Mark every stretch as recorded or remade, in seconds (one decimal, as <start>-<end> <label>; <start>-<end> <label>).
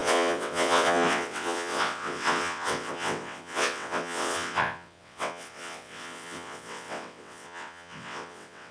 0.0-8.7 remade